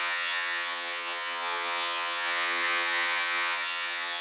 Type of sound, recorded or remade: remade